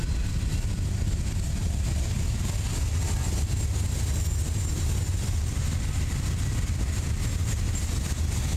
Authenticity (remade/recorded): recorded